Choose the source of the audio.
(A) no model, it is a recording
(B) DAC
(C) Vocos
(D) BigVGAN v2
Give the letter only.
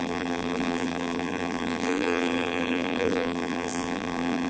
D